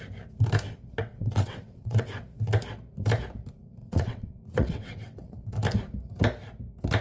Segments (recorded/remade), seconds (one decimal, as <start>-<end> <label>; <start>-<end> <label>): 0.0-1.0 recorded; 1.0-2.1 remade; 2.1-3.8 recorded; 3.8-5.5 remade; 5.5-7.0 recorded